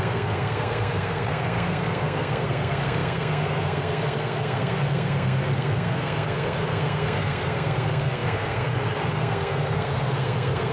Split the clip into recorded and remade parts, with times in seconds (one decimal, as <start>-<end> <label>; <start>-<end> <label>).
0.0-10.7 remade